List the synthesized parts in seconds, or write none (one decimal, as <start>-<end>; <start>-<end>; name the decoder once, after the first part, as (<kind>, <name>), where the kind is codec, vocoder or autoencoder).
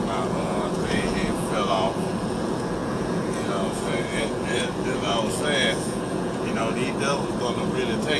0.0-6.6 (vocoder, Vocos)